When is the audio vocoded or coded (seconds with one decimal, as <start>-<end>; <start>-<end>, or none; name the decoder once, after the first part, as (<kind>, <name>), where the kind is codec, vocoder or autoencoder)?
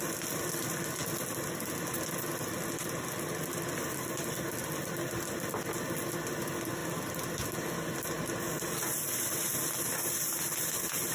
none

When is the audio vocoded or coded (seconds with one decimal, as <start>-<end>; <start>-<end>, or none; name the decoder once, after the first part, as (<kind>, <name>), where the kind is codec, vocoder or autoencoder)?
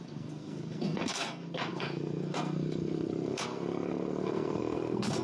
0.0-5.2 (codec, SNAC)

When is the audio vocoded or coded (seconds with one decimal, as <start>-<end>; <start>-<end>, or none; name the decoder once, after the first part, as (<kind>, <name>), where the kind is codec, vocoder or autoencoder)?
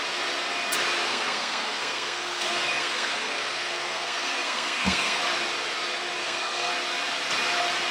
1.1-5.2 (codec, SNAC); 6.2-6.7